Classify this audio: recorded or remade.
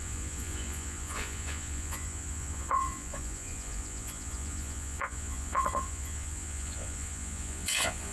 remade